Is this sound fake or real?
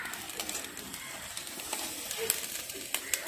real